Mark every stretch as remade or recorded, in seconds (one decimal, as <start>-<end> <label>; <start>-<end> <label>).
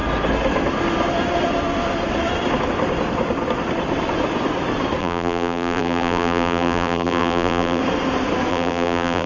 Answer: 0.0-5.0 recorded; 5.0-7.8 remade; 7.8-8.5 recorded; 8.5-9.3 remade